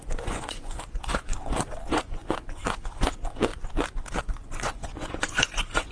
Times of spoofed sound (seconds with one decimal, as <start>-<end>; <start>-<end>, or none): 0.0-1.3; 1.9-3.5; 4.2-5.9